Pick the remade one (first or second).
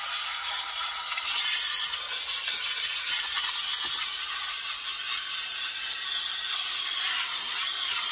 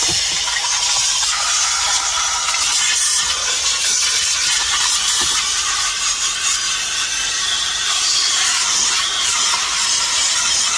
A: second